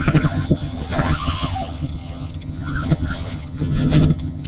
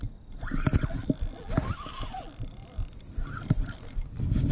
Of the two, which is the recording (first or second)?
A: second